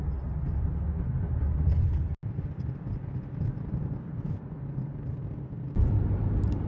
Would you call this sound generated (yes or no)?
no